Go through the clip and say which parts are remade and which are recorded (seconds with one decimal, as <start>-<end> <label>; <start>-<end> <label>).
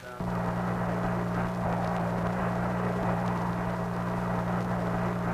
0.0-1.9 recorded; 1.9-3.5 remade; 3.5-5.3 recorded